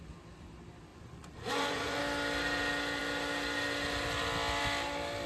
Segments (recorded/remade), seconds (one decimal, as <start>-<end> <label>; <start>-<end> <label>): 0.0-0.9 recorded; 0.9-2.0 remade; 2.0-5.3 recorded